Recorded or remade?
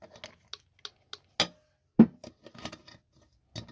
recorded